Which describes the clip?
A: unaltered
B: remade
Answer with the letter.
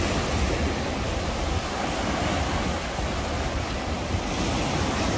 A